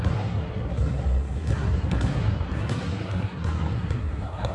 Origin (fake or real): fake